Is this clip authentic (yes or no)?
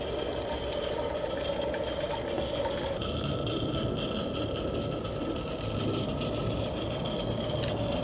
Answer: yes